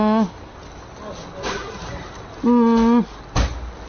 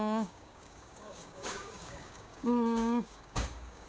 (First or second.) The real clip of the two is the first